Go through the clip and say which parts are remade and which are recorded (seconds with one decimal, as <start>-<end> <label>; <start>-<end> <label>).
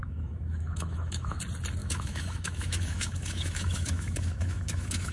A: 0.0-1.4 remade; 1.4-1.8 recorded; 1.8-5.1 remade